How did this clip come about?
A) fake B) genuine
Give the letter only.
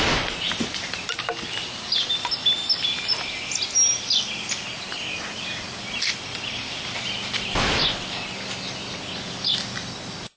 B